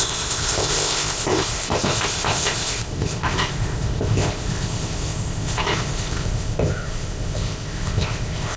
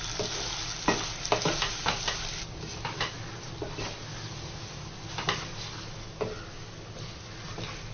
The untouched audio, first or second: second